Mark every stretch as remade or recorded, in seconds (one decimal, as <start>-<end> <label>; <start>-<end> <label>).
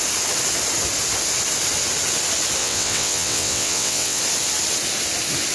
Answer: 0.0-2.6 recorded; 2.6-4.2 remade; 4.2-5.5 recorded